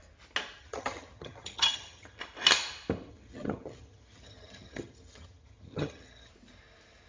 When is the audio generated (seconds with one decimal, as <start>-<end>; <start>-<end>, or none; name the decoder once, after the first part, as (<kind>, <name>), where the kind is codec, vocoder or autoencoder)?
0.6-2.2 (vocoder, HiFi-GAN); 3.1-6.3